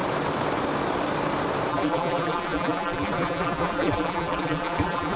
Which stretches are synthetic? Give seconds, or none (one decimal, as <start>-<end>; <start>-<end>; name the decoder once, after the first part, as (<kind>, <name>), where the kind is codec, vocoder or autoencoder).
1.7-5.2 (vocoder, BigVGAN v2)